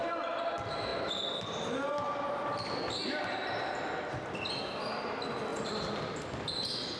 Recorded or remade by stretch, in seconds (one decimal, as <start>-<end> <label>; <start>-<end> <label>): 0.0-7.0 recorded